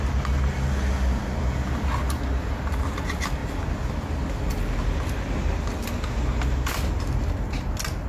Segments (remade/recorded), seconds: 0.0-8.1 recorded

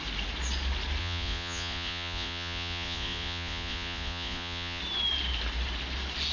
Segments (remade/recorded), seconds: 0.0-1.0 recorded; 1.0-4.8 remade; 4.8-6.3 recorded

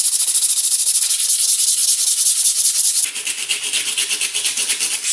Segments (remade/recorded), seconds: 0.0-5.1 recorded

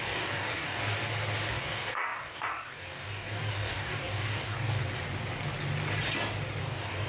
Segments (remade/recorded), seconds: 0.0-0.8 remade; 0.8-1.5 recorded; 1.5-4.8 remade; 4.8-6.6 recorded; 6.6-7.1 remade

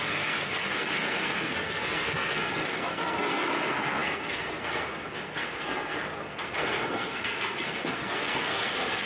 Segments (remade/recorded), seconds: 0.0-9.1 remade